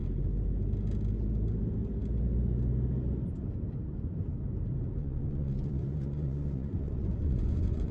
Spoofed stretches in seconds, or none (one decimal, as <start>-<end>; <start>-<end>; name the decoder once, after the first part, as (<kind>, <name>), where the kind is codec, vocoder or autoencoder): 5.0-7.9 (vocoder, Vocos)